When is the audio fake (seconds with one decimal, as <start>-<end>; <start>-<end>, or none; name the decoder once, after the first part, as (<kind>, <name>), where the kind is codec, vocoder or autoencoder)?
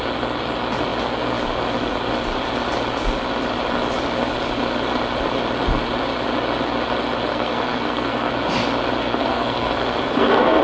7.3-8.3 (codec, SNAC); 9.0-10.6